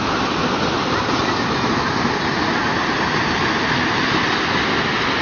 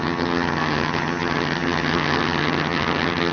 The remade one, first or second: second